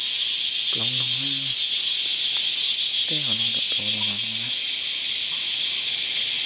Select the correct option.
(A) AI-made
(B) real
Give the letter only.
B